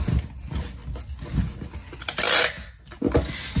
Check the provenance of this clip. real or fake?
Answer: real